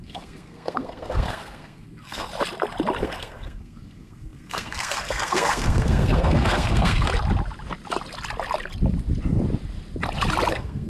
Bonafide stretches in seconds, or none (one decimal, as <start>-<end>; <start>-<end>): 2.3-3.0; 7.1-10.5